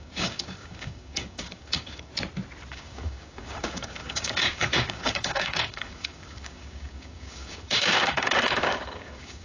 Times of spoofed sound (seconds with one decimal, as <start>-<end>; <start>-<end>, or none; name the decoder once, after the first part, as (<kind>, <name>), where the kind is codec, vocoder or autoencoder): 0.0-2.1 (codec, DAC); 2.7-9.4